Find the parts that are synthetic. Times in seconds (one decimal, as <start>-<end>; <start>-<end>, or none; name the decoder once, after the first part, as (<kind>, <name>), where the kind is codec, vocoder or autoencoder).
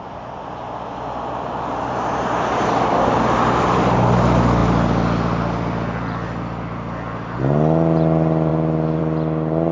none